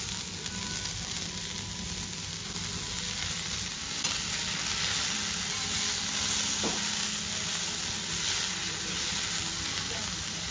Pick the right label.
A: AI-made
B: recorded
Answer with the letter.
B